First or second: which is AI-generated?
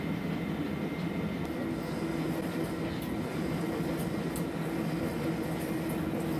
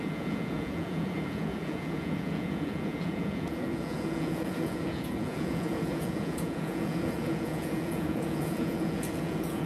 second